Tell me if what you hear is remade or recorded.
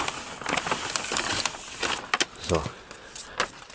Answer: recorded